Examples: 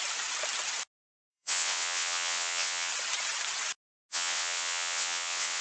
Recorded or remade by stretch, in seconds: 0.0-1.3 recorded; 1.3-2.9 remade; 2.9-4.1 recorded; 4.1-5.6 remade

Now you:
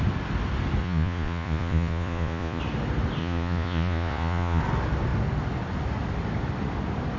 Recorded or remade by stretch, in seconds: 0.0-0.8 recorded; 0.8-2.6 remade; 2.6-3.2 recorded; 3.2-4.6 remade; 4.6-7.2 recorded

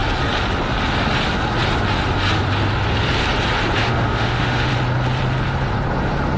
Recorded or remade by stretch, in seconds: 0.0-3.8 recorded; 3.8-4.7 remade; 4.7-6.4 recorded

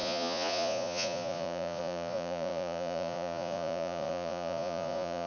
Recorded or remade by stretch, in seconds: 0.0-5.3 remade

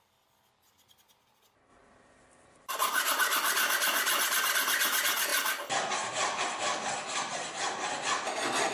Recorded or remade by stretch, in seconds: 0.0-8.7 recorded

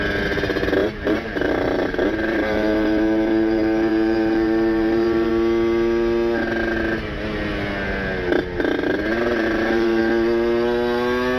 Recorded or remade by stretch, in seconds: 0.0-0.8 recorded; 0.8-5.3 remade; 5.3-9.1 recorded; 9.1-10.0 remade; 10.0-11.4 recorded